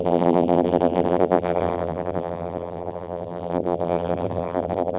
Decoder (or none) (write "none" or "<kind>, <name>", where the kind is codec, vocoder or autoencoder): vocoder, BigVGAN v2